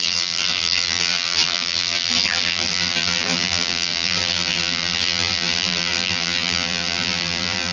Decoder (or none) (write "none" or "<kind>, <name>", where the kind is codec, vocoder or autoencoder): vocoder, BigVGAN v2